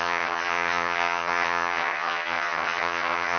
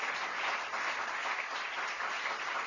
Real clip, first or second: second